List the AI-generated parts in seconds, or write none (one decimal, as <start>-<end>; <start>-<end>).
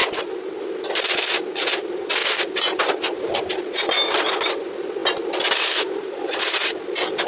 none